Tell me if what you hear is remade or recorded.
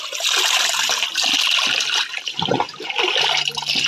recorded